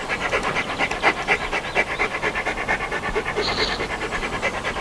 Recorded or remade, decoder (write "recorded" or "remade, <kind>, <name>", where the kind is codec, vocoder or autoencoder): recorded